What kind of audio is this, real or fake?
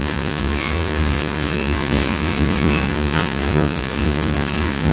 fake